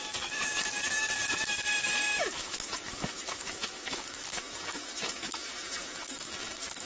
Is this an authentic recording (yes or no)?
no